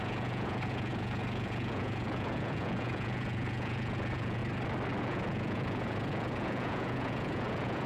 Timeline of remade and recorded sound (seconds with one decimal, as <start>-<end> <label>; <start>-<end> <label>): 0.0-4.4 remade; 4.4-5.0 recorded; 5.0-7.9 remade